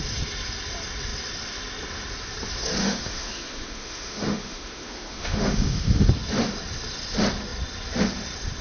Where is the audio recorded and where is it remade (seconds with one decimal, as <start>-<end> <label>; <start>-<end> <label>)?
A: 0.0-2.8 recorded; 2.8-6.1 remade; 6.1-8.6 recorded